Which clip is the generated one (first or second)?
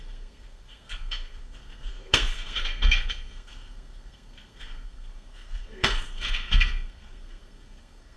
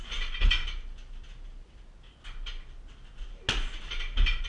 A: first